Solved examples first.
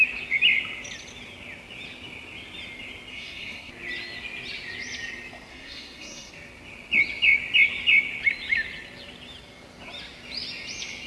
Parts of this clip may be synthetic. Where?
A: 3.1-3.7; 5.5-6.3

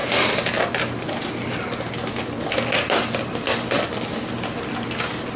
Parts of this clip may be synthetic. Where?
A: none

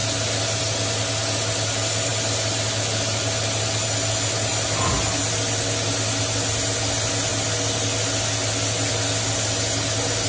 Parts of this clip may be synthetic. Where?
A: none

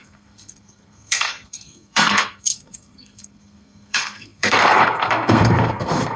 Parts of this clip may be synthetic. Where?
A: 0.0-6.2

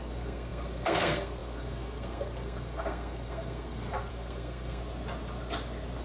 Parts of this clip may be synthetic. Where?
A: 0.0-4.8